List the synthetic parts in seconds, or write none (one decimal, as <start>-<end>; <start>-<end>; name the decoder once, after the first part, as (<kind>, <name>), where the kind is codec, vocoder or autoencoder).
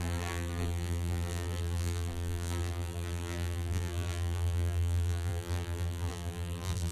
0.0-6.9 (vocoder, BigVGAN v2)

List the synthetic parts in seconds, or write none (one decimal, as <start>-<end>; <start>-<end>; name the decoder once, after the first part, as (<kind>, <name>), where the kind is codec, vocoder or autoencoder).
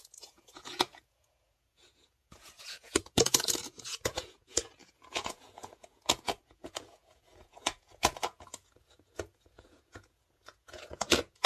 0.0-11.5 (vocoder, Vocos)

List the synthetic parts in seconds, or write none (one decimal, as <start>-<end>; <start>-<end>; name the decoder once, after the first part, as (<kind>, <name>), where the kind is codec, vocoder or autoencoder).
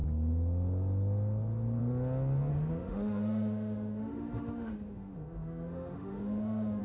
2.5-6.8 (autoencoder, DAC-VAE)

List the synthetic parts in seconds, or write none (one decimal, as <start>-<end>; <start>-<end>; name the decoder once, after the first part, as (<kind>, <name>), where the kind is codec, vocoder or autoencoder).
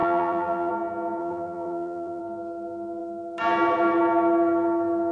0.0-0.7 (vocoder, BigVGAN v2); 1.2-2.2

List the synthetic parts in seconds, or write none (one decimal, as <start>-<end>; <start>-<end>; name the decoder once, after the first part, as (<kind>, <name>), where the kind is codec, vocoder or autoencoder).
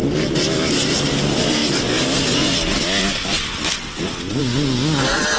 none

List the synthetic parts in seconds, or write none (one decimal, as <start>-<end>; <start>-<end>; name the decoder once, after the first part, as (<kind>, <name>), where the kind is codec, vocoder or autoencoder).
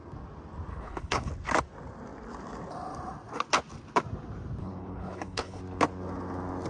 0.7-1.3 (codec, HILCodec); 4.6-5.6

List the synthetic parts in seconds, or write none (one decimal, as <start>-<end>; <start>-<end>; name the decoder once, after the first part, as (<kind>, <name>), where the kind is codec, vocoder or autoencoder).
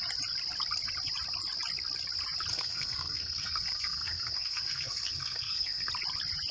2.5-5.9 (codec, SNAC)